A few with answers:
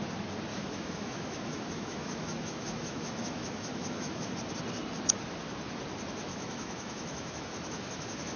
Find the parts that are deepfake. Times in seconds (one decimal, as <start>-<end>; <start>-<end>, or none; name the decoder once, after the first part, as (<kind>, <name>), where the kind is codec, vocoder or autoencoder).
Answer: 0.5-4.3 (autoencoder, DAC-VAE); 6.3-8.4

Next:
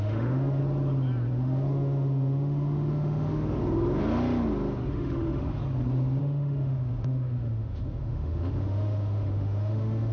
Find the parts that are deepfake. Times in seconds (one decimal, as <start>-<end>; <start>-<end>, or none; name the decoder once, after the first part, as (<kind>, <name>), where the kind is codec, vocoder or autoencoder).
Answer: 0.0-0.6 (autoencoder, DAC-VAE); 1.3-3.6; 4.9-5.6; 6.2-10.1

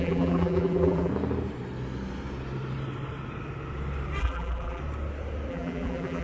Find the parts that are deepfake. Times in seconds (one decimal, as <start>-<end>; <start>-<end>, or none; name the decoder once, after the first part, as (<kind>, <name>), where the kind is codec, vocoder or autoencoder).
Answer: 0.0-1.1 (vocoder, BigVGAN v2); 4.2-4.8; 5.5-6.2

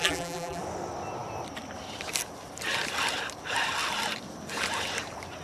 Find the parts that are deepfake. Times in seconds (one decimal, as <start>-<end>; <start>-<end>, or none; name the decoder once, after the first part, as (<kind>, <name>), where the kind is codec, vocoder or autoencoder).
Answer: 0.0-0.6 (vocoder, BigVGAN v2)

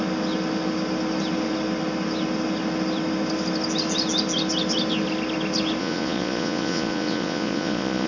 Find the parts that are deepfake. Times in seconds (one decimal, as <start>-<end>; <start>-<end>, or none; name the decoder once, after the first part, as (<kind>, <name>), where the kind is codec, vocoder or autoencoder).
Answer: 5.8-8.1 (vocoder, Vocos)

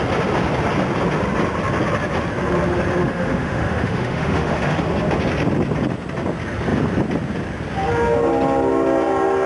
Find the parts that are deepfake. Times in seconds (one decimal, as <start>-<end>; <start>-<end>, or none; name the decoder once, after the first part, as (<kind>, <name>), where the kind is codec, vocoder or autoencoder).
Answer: 3.0-4.8 (autoencoder, DAC-VAE)

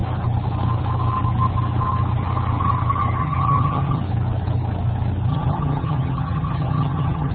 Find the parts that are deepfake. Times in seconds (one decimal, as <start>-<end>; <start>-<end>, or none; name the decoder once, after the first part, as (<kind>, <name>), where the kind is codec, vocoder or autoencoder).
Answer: 3.2-4.0 (vocoder, HiFi-GAN); 5.3-7.3

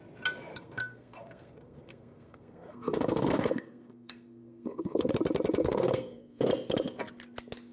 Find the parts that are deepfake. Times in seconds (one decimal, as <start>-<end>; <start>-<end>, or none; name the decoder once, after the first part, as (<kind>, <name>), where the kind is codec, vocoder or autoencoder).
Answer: 0.5-5.1 (codec, SNAC); 5.6-6.5